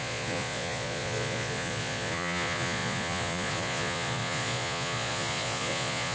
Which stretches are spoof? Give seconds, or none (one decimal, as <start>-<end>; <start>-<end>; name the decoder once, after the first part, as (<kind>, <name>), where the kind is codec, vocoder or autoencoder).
0.0-6.1 (vocoder, Vocos)